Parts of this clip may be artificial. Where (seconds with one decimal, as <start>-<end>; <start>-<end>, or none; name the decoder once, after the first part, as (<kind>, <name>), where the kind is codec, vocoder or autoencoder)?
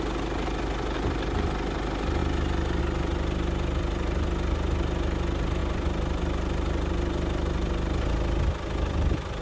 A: none